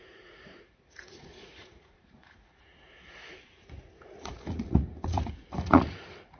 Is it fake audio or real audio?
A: fake